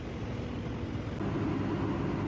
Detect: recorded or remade recorded